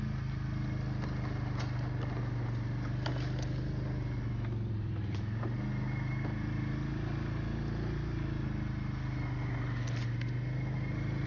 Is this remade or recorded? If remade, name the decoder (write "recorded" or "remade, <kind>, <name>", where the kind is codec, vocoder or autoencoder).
recorded